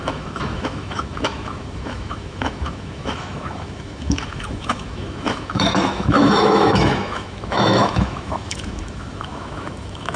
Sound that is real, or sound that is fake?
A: fake